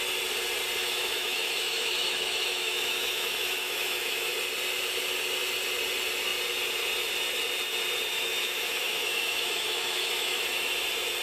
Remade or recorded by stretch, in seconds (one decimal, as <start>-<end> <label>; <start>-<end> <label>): 0.0-0.8 recorded; 0.8-4.3 remade; 4.3-8.1 recorded; 8.1-10.4 remade; 10.4-11.2 recorded